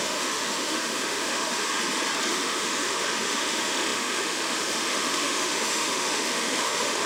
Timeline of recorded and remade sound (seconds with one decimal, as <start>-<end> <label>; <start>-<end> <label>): 0.0-1.8 remade; 1.8-2.3 recorded; 2.3-7.1 remade